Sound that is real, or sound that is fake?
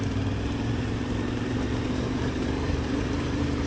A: fake